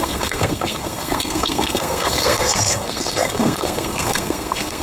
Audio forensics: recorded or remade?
remade